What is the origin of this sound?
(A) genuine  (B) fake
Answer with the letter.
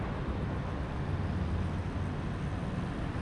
A